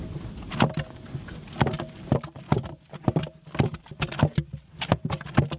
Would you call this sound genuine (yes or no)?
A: yes